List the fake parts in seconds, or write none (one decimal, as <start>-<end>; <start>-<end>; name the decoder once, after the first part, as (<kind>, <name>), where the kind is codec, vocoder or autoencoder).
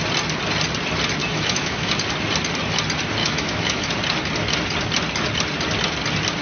1.2-1.9 (autoencoder, DAC-VAE); 3.2-3.9